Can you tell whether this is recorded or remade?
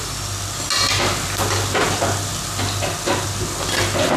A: recorded